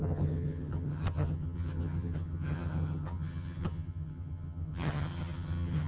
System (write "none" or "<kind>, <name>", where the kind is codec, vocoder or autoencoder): vocoder, HiFi-GAN